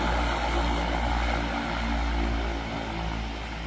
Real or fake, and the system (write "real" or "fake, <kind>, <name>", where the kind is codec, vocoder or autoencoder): real